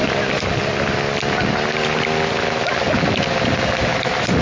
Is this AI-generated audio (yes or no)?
no